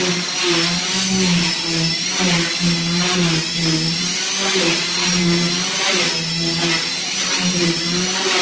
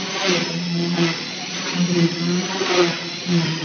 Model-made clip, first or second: second